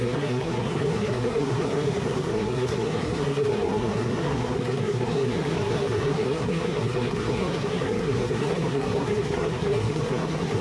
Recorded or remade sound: remade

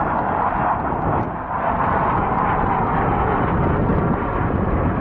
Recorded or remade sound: recorded